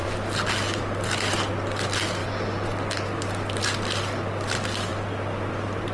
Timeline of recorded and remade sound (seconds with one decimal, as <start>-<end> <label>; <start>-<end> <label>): 0.0-5.9 recorded